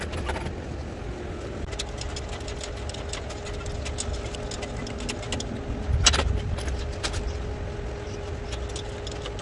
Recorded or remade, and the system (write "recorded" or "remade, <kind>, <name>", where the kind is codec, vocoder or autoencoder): recorded